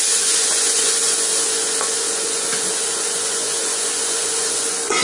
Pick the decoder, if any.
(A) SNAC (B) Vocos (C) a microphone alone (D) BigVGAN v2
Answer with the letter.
B